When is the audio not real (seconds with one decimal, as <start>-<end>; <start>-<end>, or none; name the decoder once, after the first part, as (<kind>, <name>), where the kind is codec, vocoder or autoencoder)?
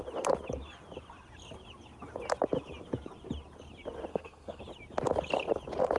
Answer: 4.1-4.6 (codec, SNAC)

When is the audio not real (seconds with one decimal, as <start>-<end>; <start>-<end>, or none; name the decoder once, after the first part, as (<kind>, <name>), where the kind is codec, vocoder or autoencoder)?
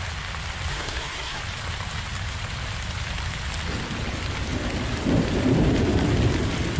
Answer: 0.7-1.4 (codec, SNAC)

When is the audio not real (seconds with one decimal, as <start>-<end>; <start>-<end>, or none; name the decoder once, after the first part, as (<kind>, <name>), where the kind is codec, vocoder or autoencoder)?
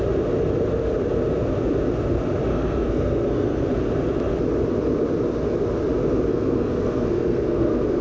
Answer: 2.5-3.7 (codec, SNAC); 6.3-8.0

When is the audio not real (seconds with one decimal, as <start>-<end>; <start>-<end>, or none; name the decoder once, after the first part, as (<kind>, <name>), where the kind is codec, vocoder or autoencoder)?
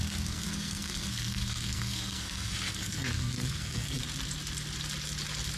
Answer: 0.0-4.0 (codec, SNAC)